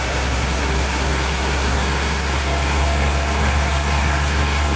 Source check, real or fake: fake